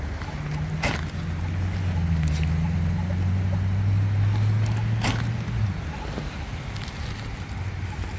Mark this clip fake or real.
real